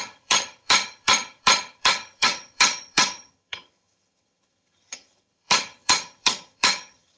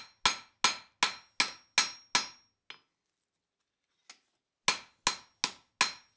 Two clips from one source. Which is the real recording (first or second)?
second